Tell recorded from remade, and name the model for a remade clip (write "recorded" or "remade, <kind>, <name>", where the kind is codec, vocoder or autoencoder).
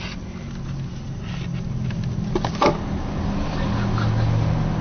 recorded